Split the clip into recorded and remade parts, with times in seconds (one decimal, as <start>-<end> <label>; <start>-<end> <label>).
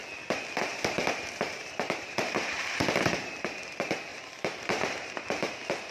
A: 0.0-0.7 recorded; 0.7-3.3 remade; 3.3-4.1 recorded; 4.1-5.2 remade; 5.2-5.9 recorded